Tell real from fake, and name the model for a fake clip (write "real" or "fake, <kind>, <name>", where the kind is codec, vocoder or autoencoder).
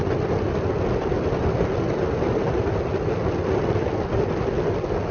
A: real